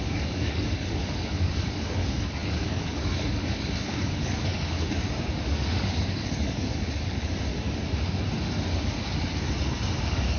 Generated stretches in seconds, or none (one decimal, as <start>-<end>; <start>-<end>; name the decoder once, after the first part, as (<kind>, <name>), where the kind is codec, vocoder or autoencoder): 0.0-7.5 (codec, DAC); 10.0-10.4